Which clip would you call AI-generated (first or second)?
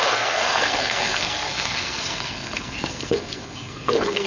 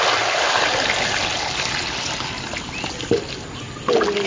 first